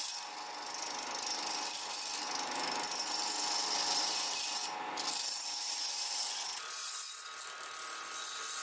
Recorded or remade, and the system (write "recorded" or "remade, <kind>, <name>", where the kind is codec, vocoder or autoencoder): recorded